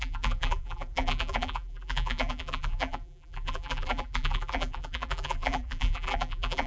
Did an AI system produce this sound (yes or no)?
yes